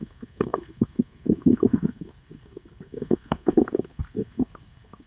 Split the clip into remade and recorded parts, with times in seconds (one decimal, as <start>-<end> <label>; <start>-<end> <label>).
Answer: 0.0-5.1 remade